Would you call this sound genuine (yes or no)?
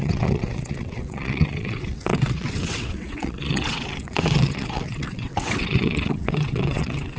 no